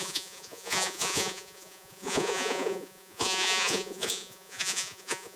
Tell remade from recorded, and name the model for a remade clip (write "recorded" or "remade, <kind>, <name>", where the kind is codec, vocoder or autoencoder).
remade, vocoder, Vocos